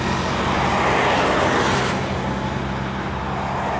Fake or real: real